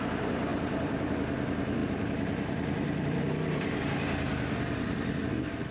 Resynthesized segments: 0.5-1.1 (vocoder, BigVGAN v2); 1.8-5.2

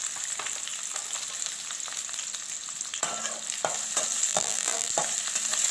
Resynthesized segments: 4.3-4.9 (vocoder, BigVGAN v2)

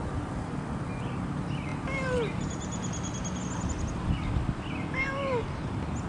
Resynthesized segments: none

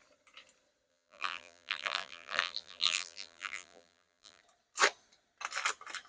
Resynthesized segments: 0.9-4.4 (vocoder, BigVGAN v2)

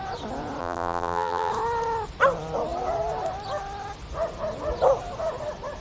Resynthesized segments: 0.6-1.5 (vocoder, BigVGAN v2)

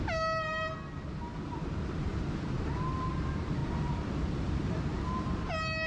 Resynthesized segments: 2.1-3.1 (vocoder, BigVGAN v2); 3.6-5.5